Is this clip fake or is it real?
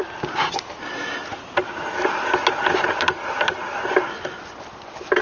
real